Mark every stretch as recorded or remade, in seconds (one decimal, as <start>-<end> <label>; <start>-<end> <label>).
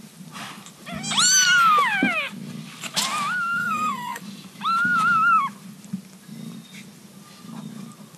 0.0-3.6 recorded; 3.6-4.2 remade; 4.2-8.2 recorded